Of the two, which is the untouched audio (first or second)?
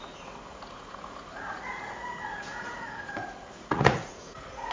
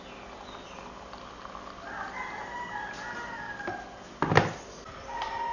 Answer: second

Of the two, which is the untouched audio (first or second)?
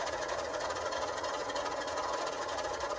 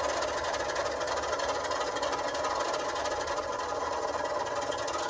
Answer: second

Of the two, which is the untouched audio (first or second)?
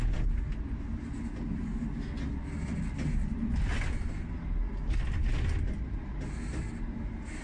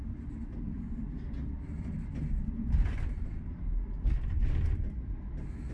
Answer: first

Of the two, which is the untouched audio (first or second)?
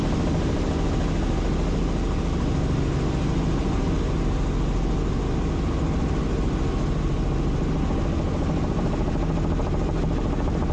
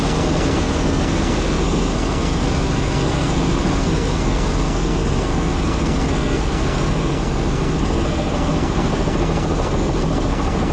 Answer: first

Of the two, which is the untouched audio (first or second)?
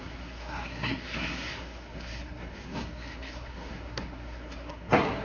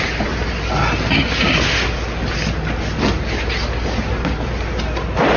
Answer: second